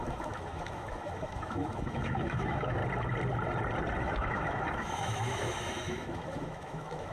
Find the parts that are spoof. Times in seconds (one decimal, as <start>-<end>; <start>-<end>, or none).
0.0-2.8; 4.0-7.1